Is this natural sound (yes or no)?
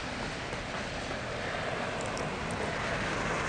yes